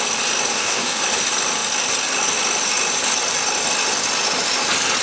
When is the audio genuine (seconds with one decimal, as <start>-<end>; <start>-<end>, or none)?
0.0-0.5; 1.0-5.0